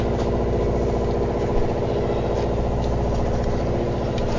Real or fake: real